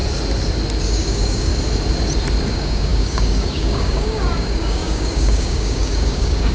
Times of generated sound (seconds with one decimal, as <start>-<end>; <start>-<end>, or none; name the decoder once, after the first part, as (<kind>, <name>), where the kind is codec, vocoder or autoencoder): 0.8-1.5 (codec, DAC); 2.5-6.5